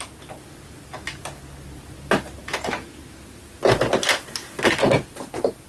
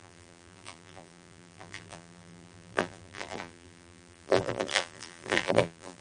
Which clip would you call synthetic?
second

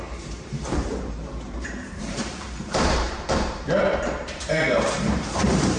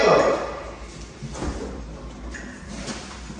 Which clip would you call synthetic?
first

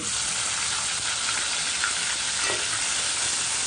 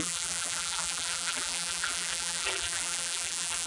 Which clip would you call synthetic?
second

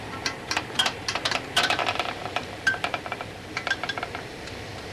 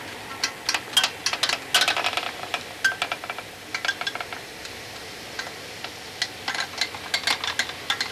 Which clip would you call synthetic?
first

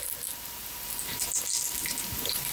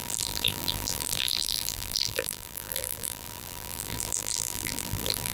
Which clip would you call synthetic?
second